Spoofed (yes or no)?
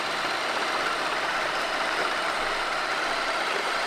no